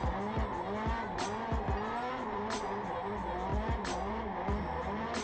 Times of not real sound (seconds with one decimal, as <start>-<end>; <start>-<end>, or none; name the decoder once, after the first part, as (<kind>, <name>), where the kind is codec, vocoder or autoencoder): none